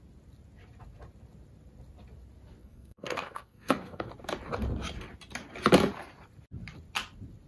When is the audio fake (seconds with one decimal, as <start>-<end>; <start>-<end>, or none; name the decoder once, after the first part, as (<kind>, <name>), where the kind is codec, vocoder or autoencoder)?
2.6-4.1 (codec, SNAC)